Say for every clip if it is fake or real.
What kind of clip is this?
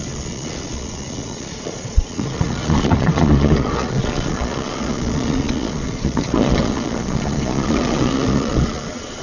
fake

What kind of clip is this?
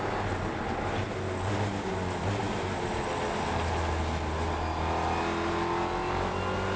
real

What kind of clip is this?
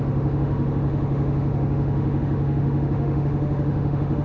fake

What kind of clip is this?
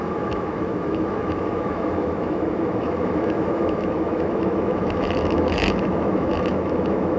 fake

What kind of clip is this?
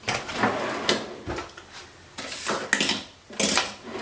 real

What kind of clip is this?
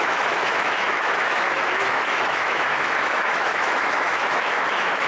fake